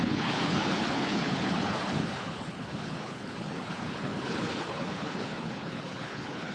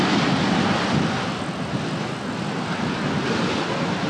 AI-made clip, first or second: first